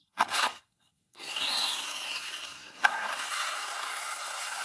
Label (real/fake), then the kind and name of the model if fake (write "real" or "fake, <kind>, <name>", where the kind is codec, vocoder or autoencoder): fake, codec, SNAC